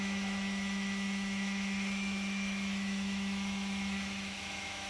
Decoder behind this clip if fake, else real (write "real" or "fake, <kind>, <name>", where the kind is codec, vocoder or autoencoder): fake, autoencoder, DAC-VAE